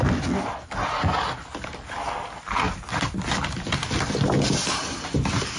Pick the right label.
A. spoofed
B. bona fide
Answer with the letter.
B